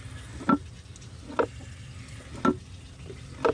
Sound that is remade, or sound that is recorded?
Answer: recorded